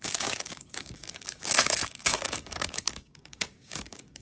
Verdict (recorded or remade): remade